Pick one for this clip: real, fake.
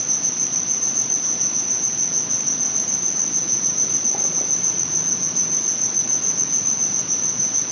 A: fake